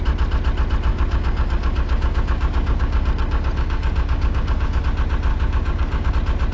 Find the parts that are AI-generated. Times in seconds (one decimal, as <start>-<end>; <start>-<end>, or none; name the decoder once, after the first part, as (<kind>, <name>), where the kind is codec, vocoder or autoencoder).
0.9-4.8 (codec, DAC); 5.3-6.1